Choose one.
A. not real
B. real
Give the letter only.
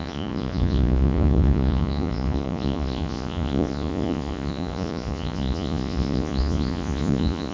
A